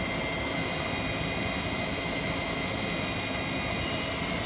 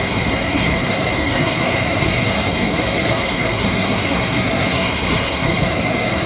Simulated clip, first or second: second